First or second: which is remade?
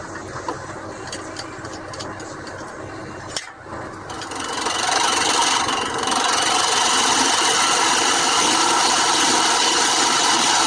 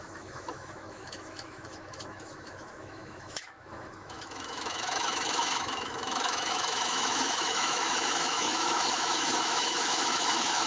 second